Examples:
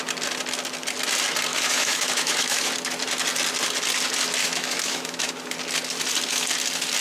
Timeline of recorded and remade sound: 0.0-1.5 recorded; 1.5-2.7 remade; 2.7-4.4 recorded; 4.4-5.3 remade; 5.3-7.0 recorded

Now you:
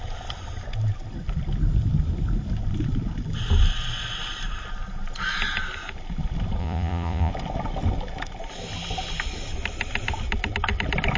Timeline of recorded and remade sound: 0.0-6.6 recorded; 6.6-7.3 remade; 7.3-11.2 recorded

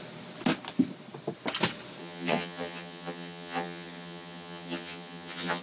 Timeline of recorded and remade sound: 0.0-2.0 recorded; 2.0-5.6 remade

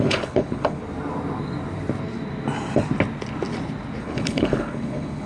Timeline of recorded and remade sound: 0.0-0.8 remade; 0.8-4.0 recorded; 4.0-5.3 remade